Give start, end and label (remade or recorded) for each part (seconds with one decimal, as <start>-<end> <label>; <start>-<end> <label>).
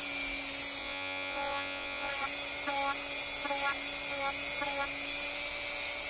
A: 0.0-0.8 recorded; 0.8-2.1 remade; 2.1-6.1 recorded